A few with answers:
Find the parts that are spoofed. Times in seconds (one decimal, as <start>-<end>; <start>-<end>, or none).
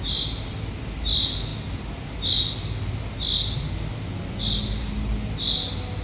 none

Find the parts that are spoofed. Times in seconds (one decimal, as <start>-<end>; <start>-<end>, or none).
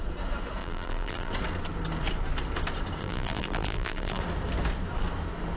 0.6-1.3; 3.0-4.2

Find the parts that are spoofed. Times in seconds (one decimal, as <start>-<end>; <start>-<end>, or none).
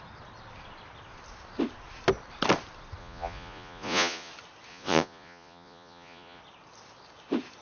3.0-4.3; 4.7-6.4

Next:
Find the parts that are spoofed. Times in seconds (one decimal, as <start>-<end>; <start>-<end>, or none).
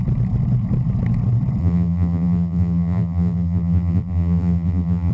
1.6-5.1